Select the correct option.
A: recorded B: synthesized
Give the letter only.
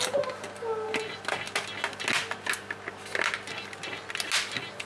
A